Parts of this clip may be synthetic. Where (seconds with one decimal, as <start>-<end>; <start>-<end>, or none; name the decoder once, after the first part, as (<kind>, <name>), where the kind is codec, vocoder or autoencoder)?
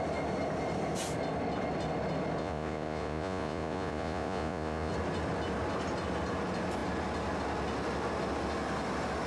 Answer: 2.4-4.9 (vocoder, Vocos)